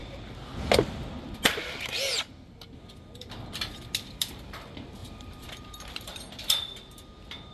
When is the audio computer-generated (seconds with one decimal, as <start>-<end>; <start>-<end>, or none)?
5.0-6.3